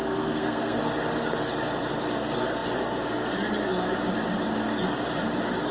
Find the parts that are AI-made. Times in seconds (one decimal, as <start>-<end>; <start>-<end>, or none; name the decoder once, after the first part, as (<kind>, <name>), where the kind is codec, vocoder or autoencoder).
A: 0.0-0.8 (codec, SNAC)